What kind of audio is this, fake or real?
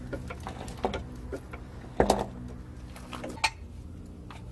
real